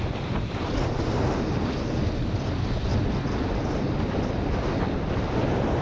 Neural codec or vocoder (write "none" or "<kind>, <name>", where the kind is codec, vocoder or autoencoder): none